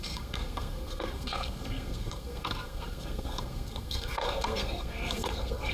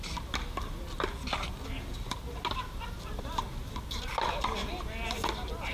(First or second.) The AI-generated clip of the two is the first